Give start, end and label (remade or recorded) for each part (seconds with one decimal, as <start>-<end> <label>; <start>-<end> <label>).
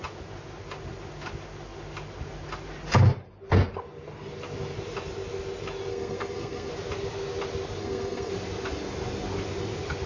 0.0-5.9 recorded; 5.9-6.7 remade; 6.7-7.8 recorded; 7.8-8.3 remade; 8.3-10.1 recorded